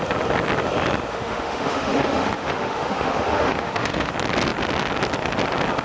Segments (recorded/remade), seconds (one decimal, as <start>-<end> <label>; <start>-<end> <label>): 0.0-1.1 recorded; 1.1-4.1 remade; 4.1-5.8 recorded